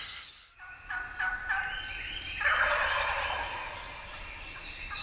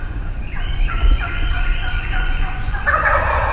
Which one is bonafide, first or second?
first